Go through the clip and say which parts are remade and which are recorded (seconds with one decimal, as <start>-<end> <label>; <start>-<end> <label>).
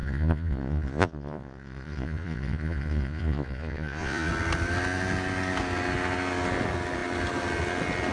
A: 0.0-4.3 remade; 4.3-8.1 recorded